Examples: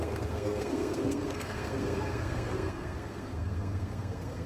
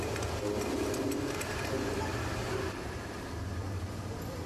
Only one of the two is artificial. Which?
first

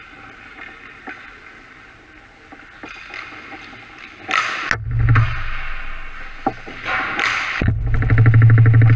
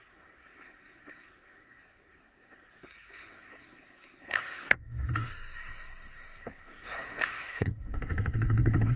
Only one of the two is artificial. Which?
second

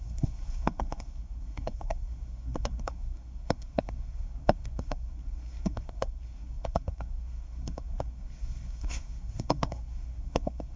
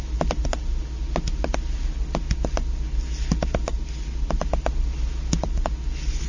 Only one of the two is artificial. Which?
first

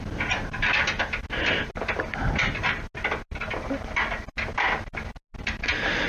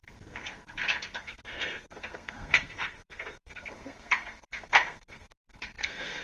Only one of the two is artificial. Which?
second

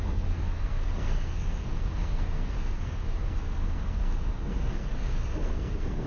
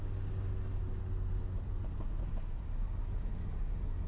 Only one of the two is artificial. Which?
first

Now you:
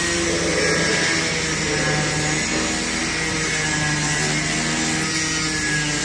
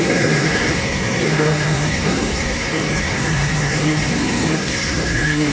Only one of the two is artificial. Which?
second